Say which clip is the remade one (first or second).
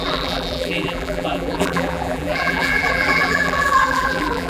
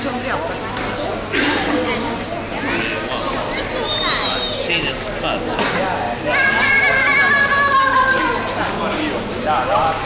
first